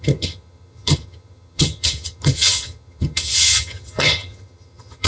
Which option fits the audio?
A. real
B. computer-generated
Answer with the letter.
B